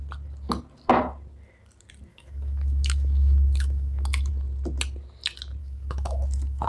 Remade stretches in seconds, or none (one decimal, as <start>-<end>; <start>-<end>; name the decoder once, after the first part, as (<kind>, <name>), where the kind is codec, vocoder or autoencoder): 2.1-4.3 (autoencoder, DAC-VAE); 5.6-6.7